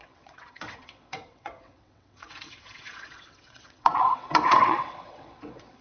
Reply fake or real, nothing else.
fake